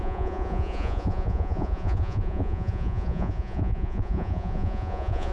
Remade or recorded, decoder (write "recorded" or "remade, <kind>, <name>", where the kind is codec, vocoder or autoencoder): remade, vocoder, Vocos